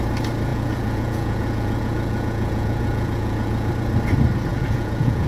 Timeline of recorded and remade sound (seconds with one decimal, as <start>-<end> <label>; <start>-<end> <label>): 0.0-0.5 recorded; 0.5-3.7 remade; 3.7-4.5 recorded; 4.5-5.3 remade